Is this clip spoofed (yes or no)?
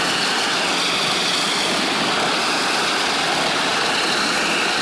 no